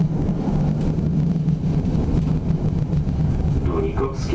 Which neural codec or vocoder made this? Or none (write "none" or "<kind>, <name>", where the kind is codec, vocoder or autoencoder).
none